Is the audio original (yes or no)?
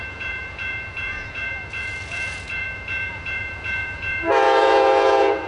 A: no